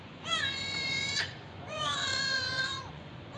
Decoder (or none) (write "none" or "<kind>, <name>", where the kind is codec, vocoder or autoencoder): vocoder, Vocos